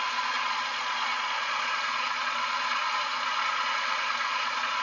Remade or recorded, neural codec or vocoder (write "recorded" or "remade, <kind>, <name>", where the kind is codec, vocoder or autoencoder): remade, vocoder, Vocos